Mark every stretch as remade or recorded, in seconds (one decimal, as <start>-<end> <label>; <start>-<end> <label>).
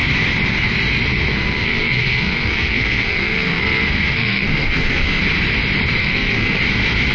0.0-1.3 recorded; 1.3-5.2 remade; 5.2-6.0 recorded; 6.0-6.6 remade; 6.6-7.1 recorded